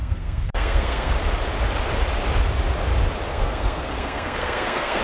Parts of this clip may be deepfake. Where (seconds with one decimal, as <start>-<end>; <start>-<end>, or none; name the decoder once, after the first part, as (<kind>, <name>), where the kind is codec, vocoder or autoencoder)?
0.0-1.1 (codec, SNAC); 3.3-5.0